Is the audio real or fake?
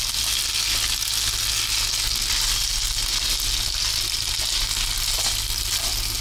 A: real